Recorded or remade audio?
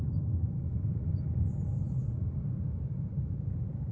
remade